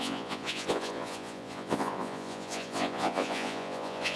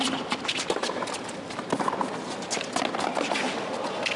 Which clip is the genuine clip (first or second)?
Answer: second